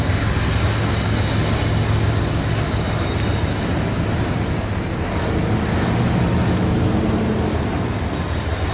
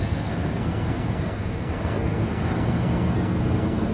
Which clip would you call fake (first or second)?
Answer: second